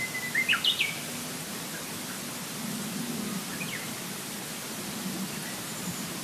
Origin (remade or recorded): recorded